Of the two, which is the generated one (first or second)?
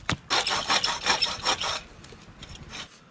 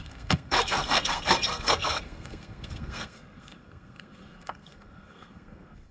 second